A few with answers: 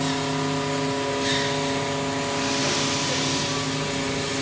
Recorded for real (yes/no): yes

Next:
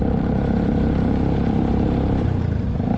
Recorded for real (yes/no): no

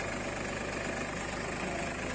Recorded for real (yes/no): yes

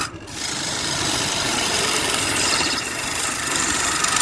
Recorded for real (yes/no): no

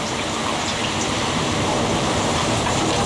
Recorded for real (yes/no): no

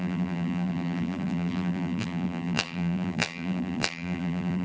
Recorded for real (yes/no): no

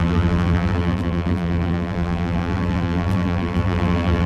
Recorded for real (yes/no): no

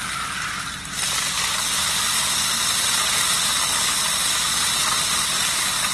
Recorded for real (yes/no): yes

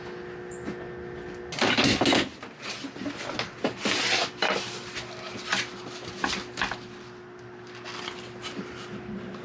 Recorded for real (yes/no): yes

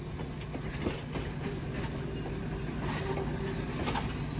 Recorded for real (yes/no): yes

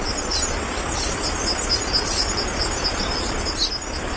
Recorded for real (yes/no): yes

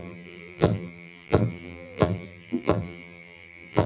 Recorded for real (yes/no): no